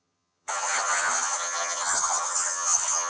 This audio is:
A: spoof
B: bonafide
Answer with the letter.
A